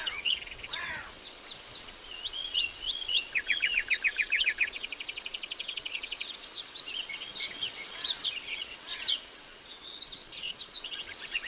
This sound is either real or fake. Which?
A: fake